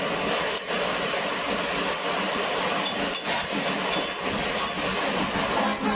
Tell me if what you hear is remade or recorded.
recorded